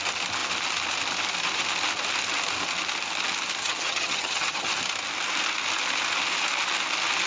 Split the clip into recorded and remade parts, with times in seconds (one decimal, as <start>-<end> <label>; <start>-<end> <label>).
0.0-3.6 recorded; 3.6-4.8 remade; 4.8-7.3 recorded